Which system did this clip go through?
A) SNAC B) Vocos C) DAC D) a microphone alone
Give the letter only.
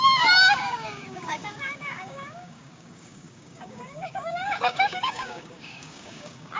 C